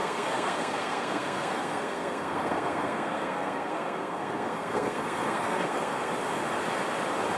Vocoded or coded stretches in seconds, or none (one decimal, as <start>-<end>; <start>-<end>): 0.0-6.1